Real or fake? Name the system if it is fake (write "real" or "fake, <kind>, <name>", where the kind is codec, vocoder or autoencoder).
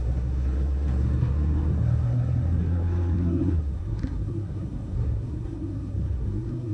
fake, codec, SNAC